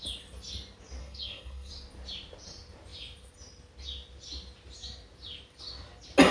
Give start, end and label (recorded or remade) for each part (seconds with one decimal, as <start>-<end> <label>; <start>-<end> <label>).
0.0-1.0 recorded; 1.0-1.7 remade; 1.7-6.3 recorded